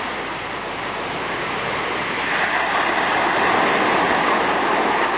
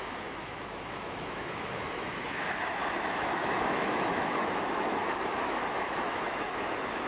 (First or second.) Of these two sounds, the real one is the first